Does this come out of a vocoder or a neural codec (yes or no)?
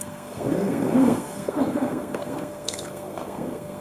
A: yes